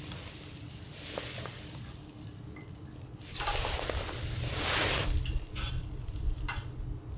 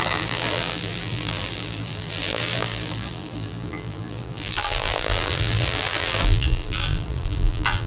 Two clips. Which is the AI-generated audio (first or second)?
second